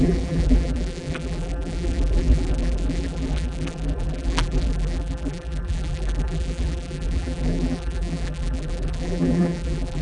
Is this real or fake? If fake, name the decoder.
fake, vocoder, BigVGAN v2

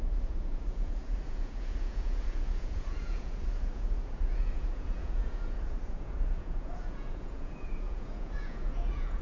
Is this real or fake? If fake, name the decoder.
fake, vocoder, Vocos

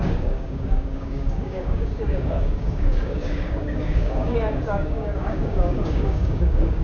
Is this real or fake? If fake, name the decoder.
fake, codec, DAC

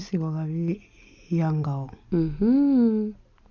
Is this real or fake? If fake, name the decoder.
real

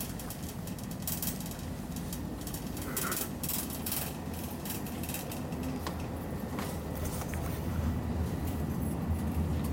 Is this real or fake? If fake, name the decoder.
real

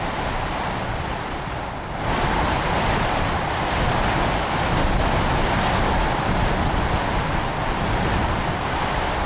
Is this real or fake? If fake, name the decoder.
fake, vocoder, BigVGAN v2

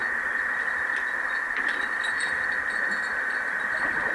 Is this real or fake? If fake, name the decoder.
real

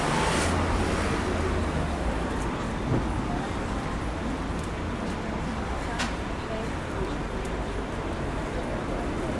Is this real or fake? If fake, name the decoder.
real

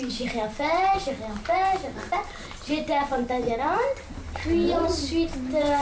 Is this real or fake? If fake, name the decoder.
fake, vocoder, BigVGAN v2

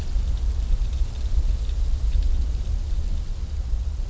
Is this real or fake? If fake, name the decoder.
real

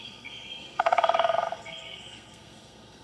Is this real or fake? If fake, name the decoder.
fake, codec, SNAC